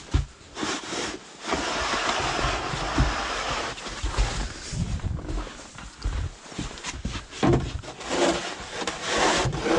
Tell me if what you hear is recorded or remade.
remade